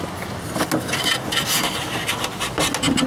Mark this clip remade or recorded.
recorded